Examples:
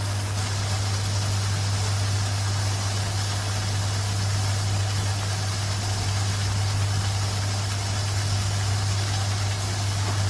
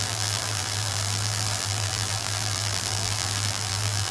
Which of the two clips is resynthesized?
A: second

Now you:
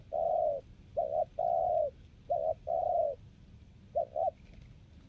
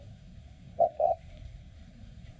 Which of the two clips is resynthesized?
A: second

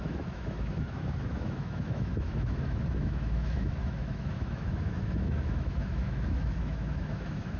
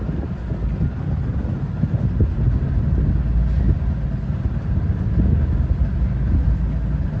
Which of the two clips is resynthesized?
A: first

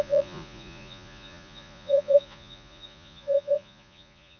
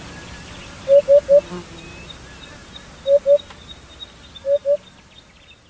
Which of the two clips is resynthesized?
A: first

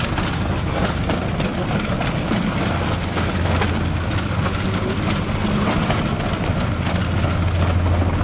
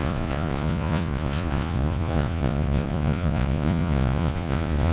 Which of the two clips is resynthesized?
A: second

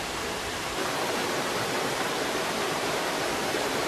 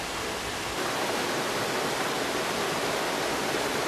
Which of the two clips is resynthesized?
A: first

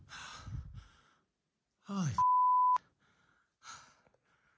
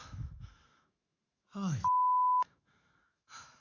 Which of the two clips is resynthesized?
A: second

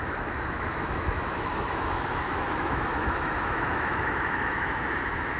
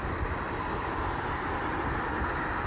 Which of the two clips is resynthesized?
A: first